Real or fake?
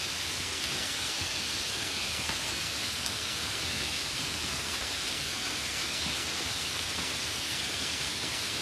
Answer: fake